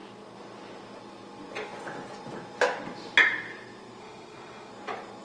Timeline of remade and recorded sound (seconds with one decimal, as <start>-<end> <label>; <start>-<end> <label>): 0.0-4.0 recorded; 4.0-4.7 remade; 4.7-5.2 recorded